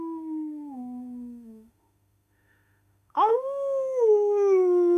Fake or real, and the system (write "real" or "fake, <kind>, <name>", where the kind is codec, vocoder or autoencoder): fake, autoencoder, DAC-VAE